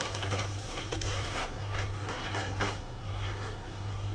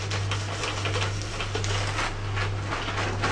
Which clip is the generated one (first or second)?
first